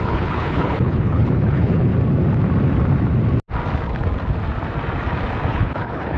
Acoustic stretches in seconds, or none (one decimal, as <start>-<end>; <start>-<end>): 1.9-5.5

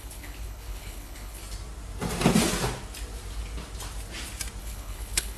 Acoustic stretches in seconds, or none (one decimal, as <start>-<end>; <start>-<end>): 1.4-4.6

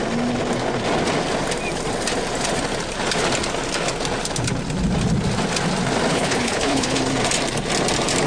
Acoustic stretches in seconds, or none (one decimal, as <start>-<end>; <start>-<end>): 0.0-6.1; 7.0-8.3